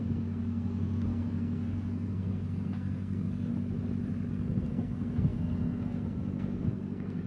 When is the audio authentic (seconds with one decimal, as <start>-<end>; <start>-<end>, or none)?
3.5-4.3